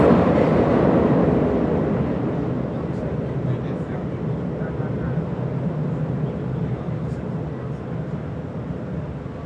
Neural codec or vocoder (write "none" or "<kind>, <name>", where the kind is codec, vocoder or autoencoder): none